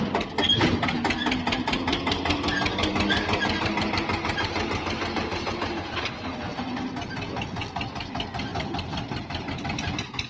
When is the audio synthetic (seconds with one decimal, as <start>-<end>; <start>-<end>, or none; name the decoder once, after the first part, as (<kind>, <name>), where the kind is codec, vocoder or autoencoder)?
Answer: none